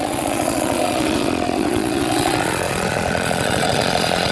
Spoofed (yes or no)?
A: yes